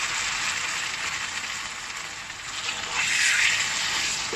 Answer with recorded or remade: recorded